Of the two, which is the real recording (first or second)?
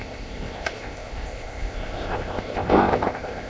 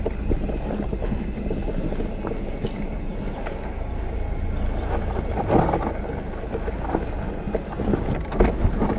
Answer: second